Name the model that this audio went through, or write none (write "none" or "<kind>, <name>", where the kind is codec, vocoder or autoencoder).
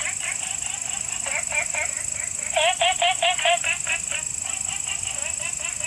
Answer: none